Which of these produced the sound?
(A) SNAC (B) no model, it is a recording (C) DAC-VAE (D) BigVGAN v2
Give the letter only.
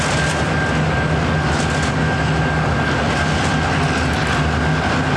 B